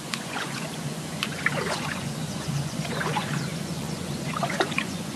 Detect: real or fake fake